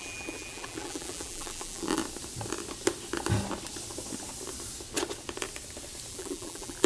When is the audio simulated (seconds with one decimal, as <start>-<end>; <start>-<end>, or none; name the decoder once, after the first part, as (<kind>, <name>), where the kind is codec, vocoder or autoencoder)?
0.0-2.0 (vocoder, BigVGAN v2); 6.1-6.9